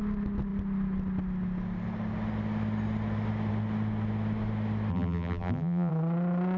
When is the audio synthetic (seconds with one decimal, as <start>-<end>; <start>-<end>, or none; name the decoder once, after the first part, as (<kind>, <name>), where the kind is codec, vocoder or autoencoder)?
4.9-5.9 (vocoder, BigVGAN v2)